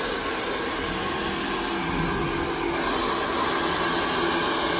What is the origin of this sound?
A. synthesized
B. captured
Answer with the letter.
B